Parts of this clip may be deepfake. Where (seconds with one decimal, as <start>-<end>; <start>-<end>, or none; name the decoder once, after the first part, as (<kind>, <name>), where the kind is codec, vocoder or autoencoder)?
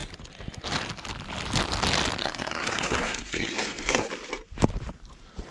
2.2-4.1 (codec, SNAC)